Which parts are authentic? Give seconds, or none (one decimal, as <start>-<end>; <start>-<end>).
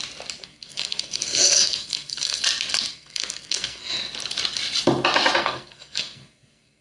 0.0-0.4; 2.4-2.9; 3.9-5.4